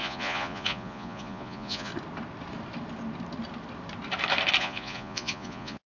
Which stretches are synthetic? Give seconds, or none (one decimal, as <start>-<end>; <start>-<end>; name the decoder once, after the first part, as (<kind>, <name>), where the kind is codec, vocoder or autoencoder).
0.0-1.9 (vocoder, Vocos); 4.6-5.9